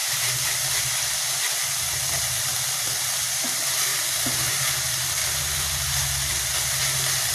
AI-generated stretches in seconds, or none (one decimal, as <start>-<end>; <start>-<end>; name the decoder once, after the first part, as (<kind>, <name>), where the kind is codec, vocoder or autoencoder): 0.0-0.6 (vocoder, BigVGAN v2)